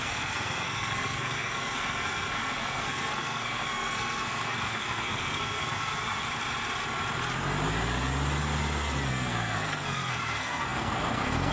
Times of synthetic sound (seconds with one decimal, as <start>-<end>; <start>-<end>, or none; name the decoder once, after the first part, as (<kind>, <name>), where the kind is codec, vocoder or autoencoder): 0.0-6.2 (codec, SNAC); 9.1-11.5